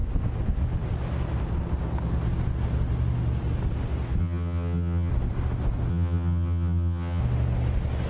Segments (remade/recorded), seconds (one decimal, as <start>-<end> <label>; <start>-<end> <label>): 0.0-4.2 recorded; 4.2-5.1 remade; 5.1-5.9 recorded; 5.9-7.2 remade; 7.2-8.1 recorded